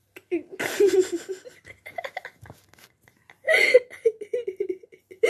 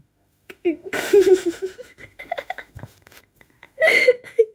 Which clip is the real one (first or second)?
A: first